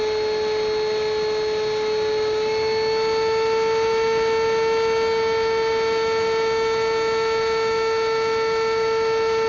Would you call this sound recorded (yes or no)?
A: yes